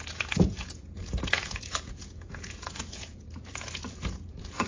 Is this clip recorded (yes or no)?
no